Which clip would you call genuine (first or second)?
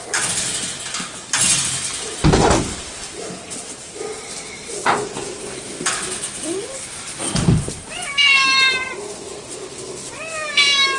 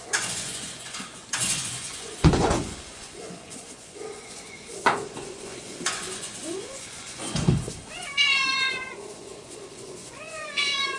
first